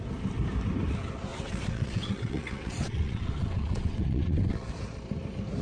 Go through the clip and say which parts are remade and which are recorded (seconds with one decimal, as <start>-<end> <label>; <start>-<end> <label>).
0.0-1.3 recorded; 1.3-4.7 remade; 4.7-5.6 recorded